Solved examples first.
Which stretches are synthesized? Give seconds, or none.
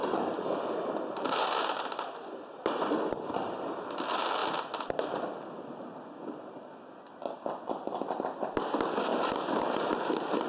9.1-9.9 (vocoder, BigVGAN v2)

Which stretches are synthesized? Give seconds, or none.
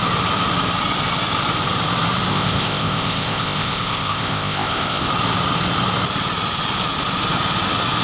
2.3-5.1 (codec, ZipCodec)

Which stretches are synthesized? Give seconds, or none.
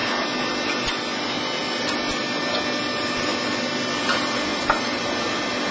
4.5-5.0 (vocoder, BigVGAN v2)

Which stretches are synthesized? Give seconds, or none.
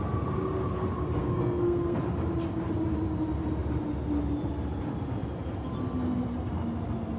1.2-2.0 (codec, SNAC)